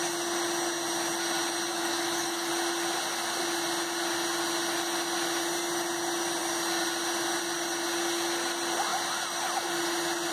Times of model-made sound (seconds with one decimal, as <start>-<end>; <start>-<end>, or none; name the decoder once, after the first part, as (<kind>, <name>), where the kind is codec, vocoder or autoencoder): 1.7-2.5 (autoencoder, DAC-VAE)